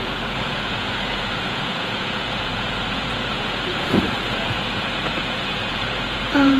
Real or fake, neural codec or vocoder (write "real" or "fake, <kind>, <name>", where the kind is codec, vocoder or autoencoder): fake, vocoder, Vocos